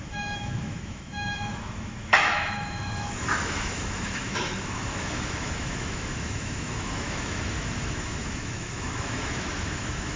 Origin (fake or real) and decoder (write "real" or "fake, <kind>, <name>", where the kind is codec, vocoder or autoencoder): fake, autoencoder, DAC-VAE